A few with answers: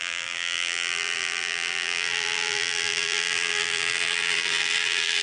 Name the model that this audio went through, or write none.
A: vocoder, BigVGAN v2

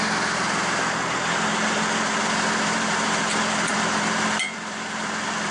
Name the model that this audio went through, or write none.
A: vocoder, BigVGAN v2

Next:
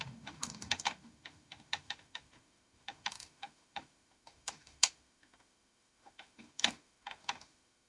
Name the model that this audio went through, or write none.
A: autoencoder, DAC-VAE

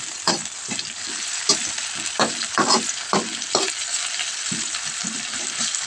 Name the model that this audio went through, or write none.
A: vocoder, BigVGAN v2